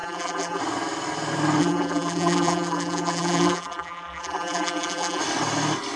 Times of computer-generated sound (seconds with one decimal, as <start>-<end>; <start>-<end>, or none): 0.0-0.6; 1.6-5.2